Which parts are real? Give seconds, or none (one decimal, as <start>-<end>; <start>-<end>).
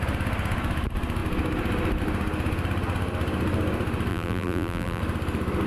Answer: 0.0-4.1; 5.0-5.7